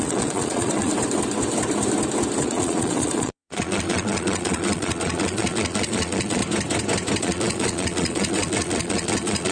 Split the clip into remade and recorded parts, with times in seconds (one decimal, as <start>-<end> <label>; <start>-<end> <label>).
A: 0.0-0.9 remade; 0.9-2.4 recorded; 2.4-6.4 remade; 6.4-7.2 recorded; 7.2-9.5 remade